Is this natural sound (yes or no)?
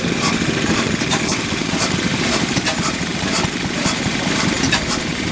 no